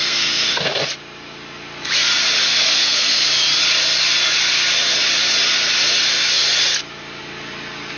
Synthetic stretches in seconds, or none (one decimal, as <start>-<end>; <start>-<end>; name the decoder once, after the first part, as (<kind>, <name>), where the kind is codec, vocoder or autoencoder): 0.0-0.8 (codec, SNAC); 2.4-3.2

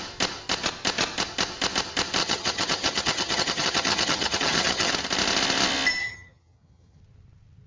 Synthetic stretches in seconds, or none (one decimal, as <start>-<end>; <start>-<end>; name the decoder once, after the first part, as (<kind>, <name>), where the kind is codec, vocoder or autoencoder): 2.2-4.9 (vocoder, HiFi-GAN); 6.0-7.0

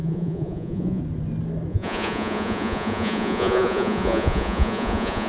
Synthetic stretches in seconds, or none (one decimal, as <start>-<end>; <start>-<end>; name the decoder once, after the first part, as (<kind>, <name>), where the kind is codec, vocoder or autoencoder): 0.0-1.0 (vocoder, Vocos); 1.7-5.3

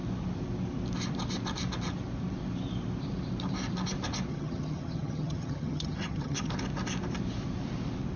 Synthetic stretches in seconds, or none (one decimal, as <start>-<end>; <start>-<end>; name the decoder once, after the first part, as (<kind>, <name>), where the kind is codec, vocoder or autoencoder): 4.3-6.5 (vocoder, HiFi-GAN)

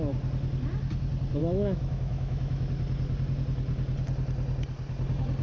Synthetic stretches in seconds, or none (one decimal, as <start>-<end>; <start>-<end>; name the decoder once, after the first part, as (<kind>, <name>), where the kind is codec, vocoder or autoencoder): 1.4-2.7 (autoencoder, DAC-VAE)

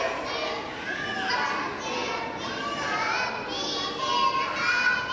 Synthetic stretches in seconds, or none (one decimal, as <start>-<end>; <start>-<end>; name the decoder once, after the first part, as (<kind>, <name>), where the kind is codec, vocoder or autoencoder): none

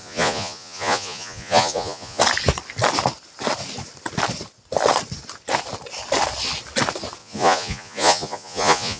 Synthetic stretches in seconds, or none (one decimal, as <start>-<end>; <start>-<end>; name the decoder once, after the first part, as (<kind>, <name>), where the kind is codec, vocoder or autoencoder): 0.0-2.2 (vocoder, Vocos); 7.2-9.0